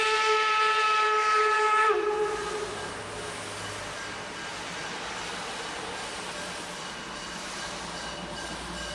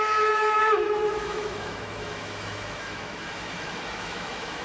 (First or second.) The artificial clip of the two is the second